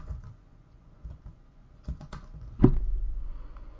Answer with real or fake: fake